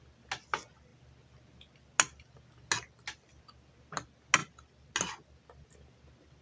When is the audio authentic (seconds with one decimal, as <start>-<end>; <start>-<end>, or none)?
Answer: 0.0-6.4